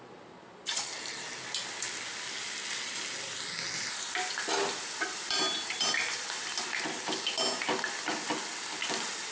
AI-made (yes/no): no